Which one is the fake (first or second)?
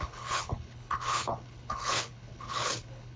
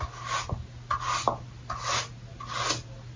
first